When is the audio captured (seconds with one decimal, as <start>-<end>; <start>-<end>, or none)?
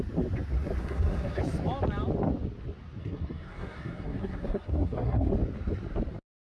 0.0-0.8; 1.4-3.0; 5.3-6.5